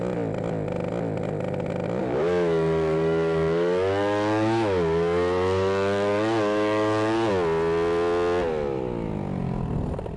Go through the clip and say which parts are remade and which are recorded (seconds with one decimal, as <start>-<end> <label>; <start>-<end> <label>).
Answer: 0.0-2.0 recorded; 2.0-7.3 remade; 7.3-10.2 recorded